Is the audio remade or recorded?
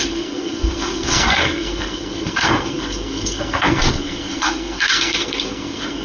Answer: remade